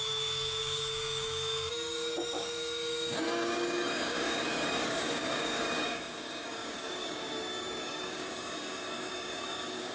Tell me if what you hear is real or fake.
fake